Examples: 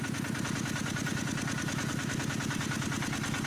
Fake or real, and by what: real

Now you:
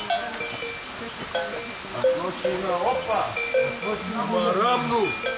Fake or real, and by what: real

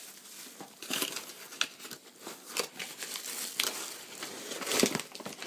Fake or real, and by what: real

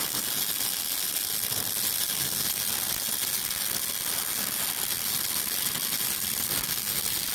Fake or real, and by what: real